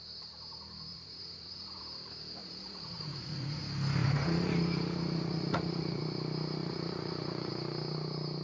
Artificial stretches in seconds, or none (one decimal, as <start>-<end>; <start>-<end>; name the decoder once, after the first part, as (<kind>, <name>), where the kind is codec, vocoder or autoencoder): 0.9-1.8 (vocoder, Vocos); 2.4-3.6; 4.0-6.0; 6.6-7.5